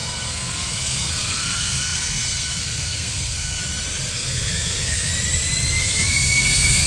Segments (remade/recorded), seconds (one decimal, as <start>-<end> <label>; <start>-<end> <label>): 0.0-3.6 remade; 3.6-4.1 recorded; 4.1-5.1 remade; 5.1-5.8 recorded; 5.8-6.9 remade